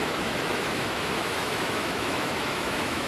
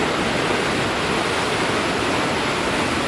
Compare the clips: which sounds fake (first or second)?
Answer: first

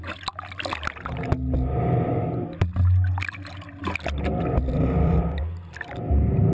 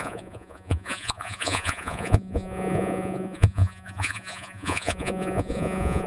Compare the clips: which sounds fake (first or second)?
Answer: second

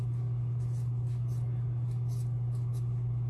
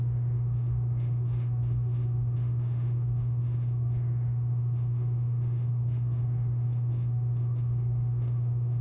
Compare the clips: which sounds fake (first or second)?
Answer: second